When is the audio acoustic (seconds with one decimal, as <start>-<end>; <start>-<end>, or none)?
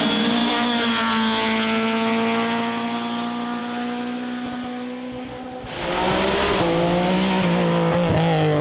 0.0-0.4; 0.9-8.6